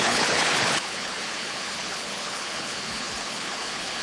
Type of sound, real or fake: fake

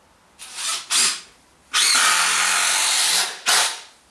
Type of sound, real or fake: real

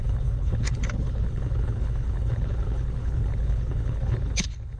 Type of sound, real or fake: fake